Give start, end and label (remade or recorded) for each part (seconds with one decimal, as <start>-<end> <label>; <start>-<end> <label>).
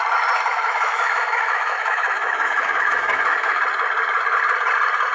0.0-0.5 recorded; 0.5-3.6 remade; 3.6-5.1 recorded